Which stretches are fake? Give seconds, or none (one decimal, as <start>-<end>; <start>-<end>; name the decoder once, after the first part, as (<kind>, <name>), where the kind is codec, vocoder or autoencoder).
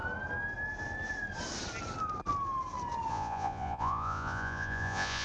3.1-5.2 (vocoder, Vocos)